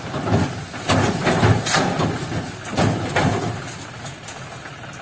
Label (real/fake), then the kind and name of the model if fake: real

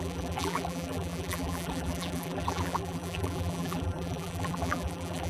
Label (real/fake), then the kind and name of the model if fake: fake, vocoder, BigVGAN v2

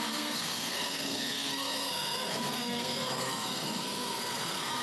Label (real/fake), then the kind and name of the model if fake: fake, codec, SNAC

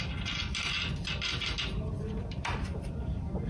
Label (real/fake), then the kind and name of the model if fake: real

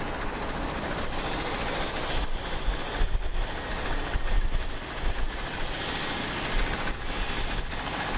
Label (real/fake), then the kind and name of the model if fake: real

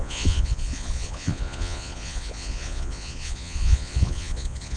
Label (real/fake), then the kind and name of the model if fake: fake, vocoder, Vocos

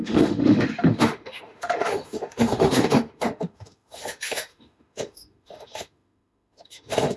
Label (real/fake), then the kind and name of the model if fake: fake, autoencoder, DAC-VAE